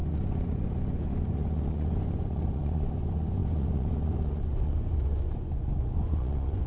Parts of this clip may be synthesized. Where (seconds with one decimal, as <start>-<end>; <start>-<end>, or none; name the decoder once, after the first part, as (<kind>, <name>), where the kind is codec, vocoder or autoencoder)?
0.0-6.7 (vocoder, Vocos)